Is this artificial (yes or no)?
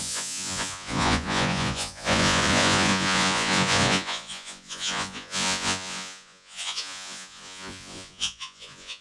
yes